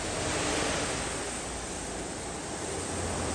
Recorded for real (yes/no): yes